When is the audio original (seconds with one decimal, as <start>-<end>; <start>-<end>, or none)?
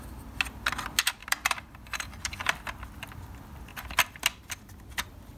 0.0-1.2; 2.3-5.4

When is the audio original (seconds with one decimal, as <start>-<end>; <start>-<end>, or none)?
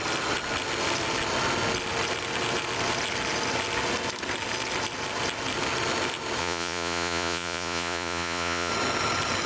0.0-6.4; 8.7-9.5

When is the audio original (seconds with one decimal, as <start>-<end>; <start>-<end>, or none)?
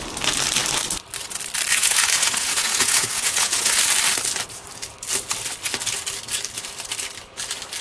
0.0-1.7; 3.8-7.8